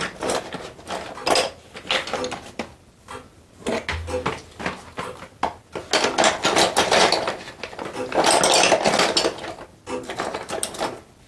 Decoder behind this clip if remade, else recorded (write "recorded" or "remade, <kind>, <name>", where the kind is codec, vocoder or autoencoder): recorded